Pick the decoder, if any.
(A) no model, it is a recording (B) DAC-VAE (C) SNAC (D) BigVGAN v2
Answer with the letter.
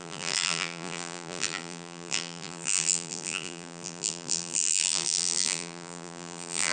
D